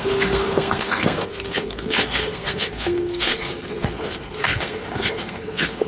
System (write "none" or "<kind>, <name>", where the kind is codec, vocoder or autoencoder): codec, SNAC